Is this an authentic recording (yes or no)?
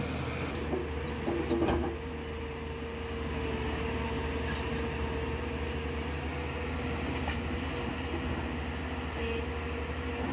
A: yes